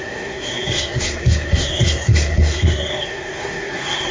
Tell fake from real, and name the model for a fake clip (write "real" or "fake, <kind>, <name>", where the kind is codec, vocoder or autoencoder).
fake, codec, SNAC